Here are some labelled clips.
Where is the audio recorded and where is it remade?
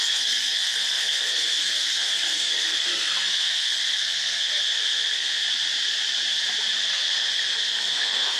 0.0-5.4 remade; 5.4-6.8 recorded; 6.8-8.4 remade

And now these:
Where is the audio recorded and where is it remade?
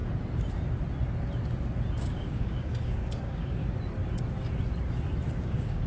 0.0-2.0 recorded; 2.0-3.6 remade; 3.6-5.4 recorded; 5.4-5.9 remade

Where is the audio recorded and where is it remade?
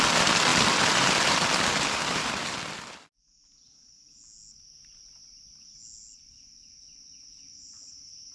0.0-8.3 recorded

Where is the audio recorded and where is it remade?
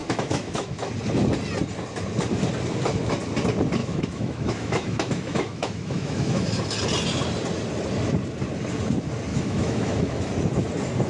0.0-0.9 remade; 0.9-3.8 recorded; 3.8-6.6 remade; 6.6-9.3 recorded; 9.3-10.3 remade; 10.3-11.1 recorded